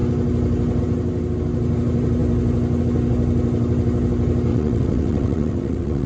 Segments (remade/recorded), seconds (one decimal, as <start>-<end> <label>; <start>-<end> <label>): 0.0-4.5 recorded; 4.5-6.1 remade